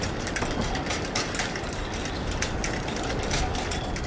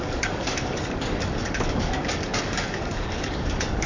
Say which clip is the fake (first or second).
second